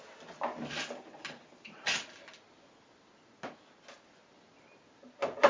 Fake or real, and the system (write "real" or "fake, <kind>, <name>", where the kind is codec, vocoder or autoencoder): real